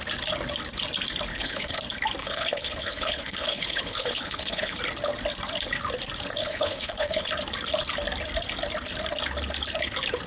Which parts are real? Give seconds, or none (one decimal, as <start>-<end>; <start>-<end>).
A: 0.0-1.3; 1.8-2.2; 4.8-6.4; 7.3-10.3